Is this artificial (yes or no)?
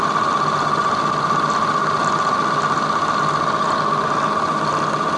no